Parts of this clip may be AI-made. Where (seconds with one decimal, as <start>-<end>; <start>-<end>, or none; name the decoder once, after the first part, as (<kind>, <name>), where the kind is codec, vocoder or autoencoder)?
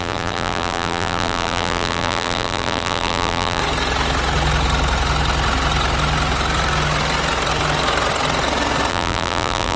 0.0-3.6 (vocoder, BigVGAN v2); 8.9-9.8